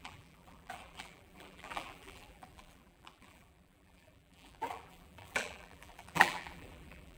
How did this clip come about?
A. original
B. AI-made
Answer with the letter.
B